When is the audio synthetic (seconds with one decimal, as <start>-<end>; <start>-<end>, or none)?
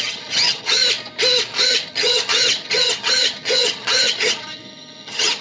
0.0-0.8; 1.6-5.4